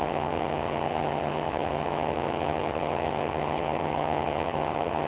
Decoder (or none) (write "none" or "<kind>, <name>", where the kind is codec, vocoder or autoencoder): vocoder, HiFi-GAN